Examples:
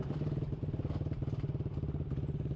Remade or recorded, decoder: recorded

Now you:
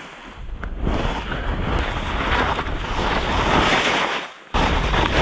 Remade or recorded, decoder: recorded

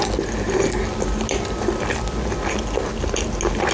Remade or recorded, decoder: recorded